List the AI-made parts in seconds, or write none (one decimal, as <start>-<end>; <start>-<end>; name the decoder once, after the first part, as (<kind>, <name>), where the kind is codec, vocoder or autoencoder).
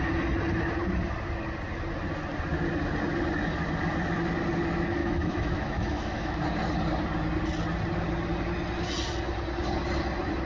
5.0-6.4 (autoencoder, DAC-VAE)